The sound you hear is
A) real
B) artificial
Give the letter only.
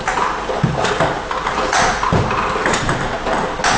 A